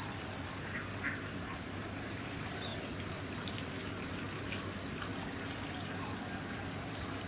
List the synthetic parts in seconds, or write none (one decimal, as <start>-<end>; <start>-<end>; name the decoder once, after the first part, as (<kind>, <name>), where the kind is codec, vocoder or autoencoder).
0.0-5.1 (vocoder, BigVGAN v2); 6.5-7.3